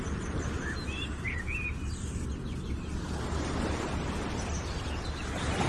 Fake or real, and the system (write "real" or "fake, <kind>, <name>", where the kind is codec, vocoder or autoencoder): real